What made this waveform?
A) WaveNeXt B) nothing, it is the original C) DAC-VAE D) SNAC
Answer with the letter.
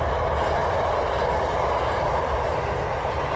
B